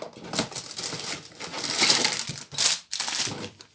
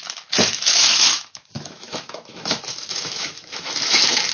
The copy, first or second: second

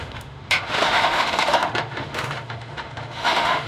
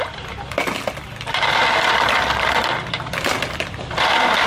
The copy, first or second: first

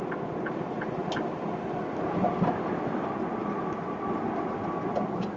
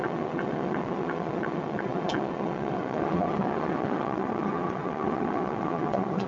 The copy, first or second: second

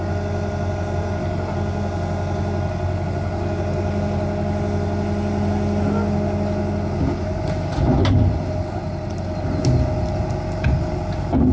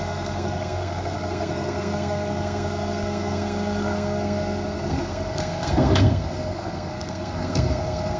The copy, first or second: second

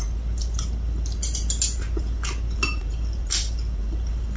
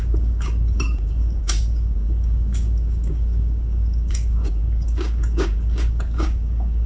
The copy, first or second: second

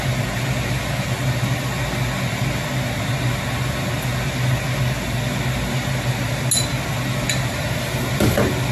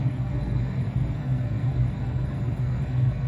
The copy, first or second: second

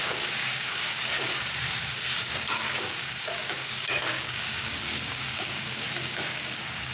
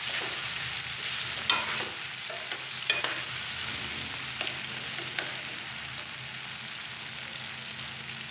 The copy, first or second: first